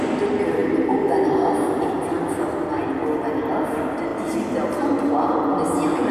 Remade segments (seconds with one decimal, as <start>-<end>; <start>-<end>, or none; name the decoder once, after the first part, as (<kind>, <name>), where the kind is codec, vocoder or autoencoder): none